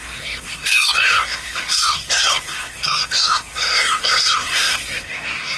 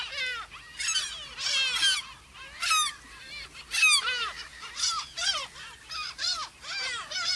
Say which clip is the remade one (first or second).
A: first